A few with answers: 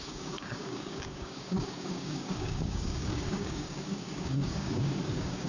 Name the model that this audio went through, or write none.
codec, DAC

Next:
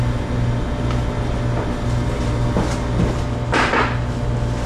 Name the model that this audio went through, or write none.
none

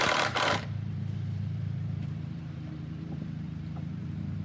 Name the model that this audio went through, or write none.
vocoder, BigVGAN v2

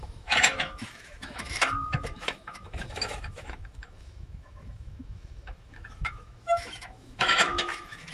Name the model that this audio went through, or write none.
autoencoder, DAC-VAE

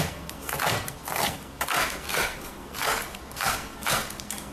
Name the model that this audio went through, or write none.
codec, SNAC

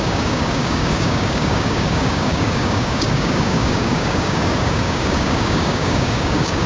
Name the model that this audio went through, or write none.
codec, DAC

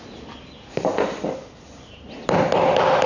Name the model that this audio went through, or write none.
none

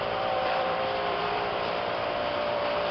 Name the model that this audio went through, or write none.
vocoder, BigVGAN v2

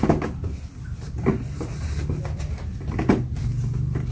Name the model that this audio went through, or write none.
none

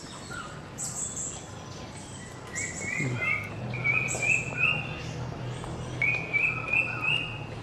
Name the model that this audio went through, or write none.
none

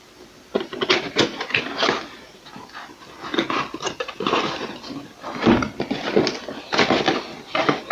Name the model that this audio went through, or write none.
none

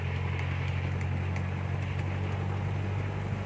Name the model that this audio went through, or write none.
none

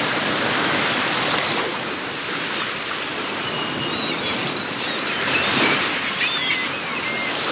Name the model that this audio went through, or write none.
none